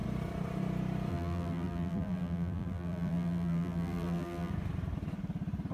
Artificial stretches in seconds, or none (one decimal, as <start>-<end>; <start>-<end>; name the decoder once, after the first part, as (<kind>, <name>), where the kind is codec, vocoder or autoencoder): 1.1-4.5 (vocoder, BigVGAN v2)

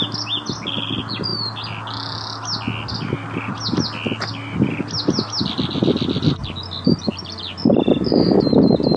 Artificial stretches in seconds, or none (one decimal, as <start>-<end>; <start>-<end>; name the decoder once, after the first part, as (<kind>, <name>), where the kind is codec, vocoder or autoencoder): none

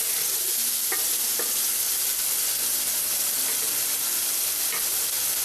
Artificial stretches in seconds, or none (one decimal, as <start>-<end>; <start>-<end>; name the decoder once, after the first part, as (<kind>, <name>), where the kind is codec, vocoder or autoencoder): none

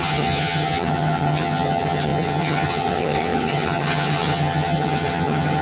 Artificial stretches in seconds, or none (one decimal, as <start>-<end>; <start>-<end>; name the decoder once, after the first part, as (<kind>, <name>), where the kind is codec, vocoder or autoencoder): 0.0-5.6 (vocoder, HiFi-GAN)

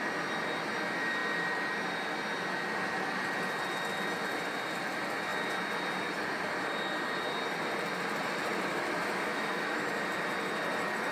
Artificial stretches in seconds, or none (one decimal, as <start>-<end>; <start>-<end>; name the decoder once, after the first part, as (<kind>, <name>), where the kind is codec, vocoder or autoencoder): 8.7-9.9 (autoencoder, DAC-VAE)

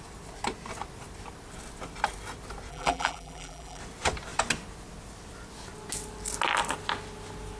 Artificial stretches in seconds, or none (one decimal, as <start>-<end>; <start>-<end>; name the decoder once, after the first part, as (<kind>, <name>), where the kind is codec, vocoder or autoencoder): 2.7-3.8 (vocoder, BigVGAN v2)